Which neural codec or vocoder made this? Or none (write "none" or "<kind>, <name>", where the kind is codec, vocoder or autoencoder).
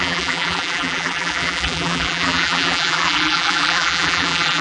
vocoder, BigVGAN v2